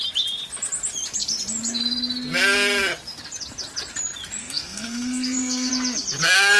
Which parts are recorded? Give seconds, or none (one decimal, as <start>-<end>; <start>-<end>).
0.0-4.4; 5.7-6.6